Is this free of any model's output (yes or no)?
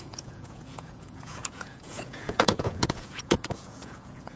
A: no